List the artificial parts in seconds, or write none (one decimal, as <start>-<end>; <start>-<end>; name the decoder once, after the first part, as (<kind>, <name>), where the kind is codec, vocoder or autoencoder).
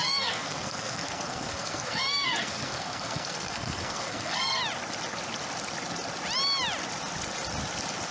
0.0-4.6 (codec, SNAC)